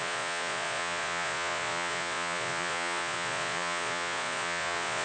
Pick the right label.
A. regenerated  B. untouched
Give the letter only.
A